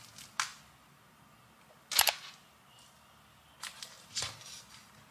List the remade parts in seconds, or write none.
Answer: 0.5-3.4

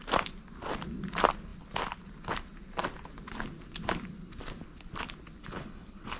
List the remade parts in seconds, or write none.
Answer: 5.4-6.2

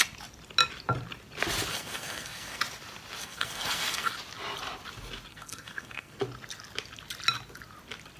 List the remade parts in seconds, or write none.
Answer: 1.7-2.6; 3.2-4.1; 5.3-6.2

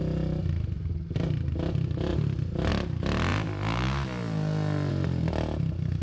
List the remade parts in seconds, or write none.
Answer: 2.1-2.7

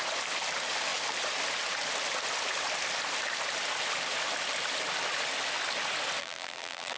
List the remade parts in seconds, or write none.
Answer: 6.2-7.0

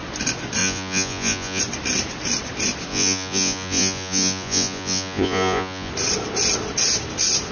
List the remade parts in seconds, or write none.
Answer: 0.6-1.6; 2.9-5.9